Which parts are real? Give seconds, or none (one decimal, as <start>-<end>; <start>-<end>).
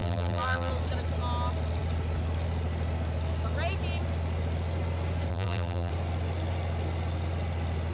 0.7-5.3; 5.9-7.9